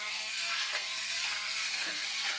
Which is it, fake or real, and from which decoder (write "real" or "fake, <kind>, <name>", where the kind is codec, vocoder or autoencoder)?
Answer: fake, codec, SNAC